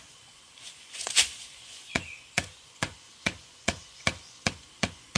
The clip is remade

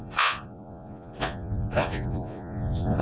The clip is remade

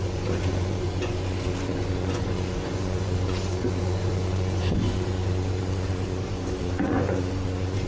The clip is remade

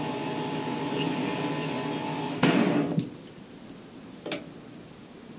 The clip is recorded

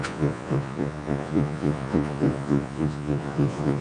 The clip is remade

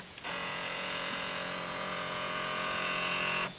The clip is remade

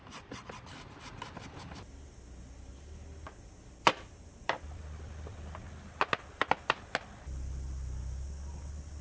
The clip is recorded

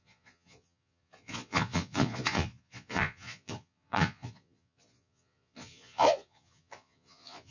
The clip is remade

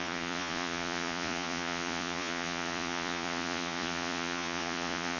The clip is remade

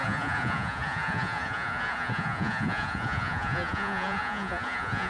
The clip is remade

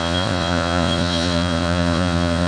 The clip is remade